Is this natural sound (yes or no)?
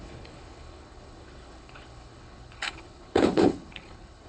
no